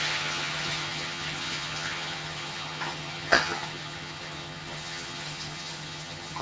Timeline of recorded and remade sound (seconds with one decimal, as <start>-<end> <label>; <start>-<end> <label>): 0.0-6.4 remade